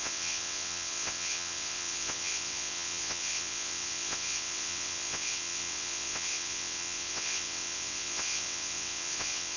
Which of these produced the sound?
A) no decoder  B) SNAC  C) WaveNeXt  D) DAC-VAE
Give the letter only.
C